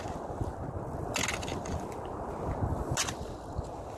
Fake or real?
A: real